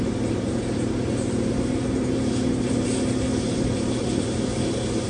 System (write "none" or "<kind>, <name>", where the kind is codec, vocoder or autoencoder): vocoder, BigVGAN v2